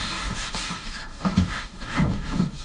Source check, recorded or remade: remade